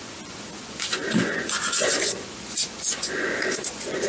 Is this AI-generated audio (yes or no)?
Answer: yes